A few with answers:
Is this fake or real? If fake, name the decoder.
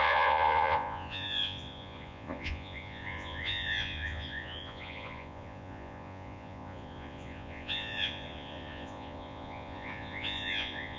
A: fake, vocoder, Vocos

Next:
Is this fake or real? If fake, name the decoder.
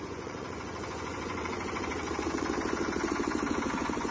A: fake, vocoder, Vocos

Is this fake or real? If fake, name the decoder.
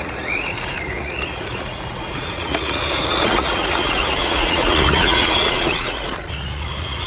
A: fake, vocoder, Vocos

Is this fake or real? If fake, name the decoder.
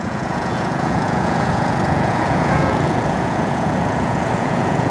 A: fake, vocoder, Vocos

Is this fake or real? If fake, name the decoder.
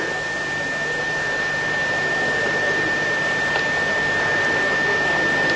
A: real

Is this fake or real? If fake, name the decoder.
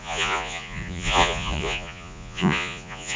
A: fake, vocoder, Vocos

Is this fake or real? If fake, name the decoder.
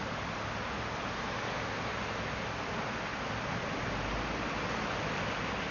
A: real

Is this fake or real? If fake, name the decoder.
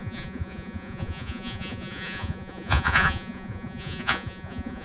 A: fake, vocoder, Vocos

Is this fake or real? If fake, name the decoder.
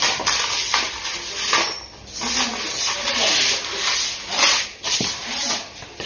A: real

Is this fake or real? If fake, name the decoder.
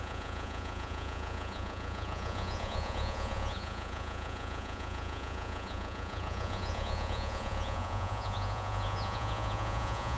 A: fake, vocoder, Vocos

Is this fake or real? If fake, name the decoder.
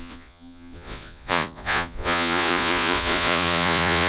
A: fake, vocoder, Vocos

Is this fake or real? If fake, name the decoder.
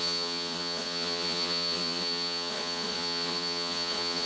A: fake, vocoder, Vocos